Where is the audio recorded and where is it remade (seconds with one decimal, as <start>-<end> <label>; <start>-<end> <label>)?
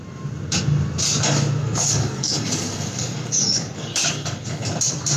0.0-1.6 recorded; 1.6-4.7 remade; 4.7-5.2 recorded